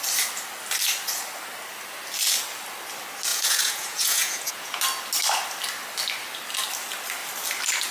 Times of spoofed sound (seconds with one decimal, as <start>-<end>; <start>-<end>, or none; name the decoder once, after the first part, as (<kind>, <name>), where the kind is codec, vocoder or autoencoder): 3.3-4.8 (vocoder, Vocos)